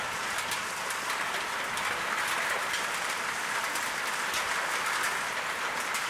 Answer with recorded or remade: recorded